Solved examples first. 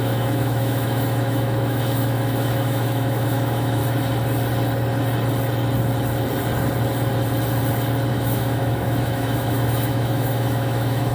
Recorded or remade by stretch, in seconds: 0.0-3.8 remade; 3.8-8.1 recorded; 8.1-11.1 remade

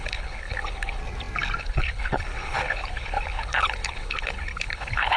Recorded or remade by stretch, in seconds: 0.0-1.0 remade; 1.0-1.6 recorded; 1.6-5.2 remade

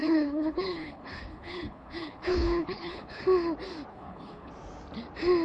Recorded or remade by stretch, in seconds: 0.0-3.2 remade; 3.2-3.9 recorded; 3.9-4.5 remade; 4.5-5.4 recorded